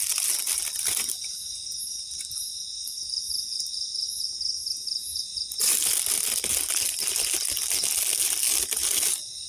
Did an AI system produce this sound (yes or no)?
no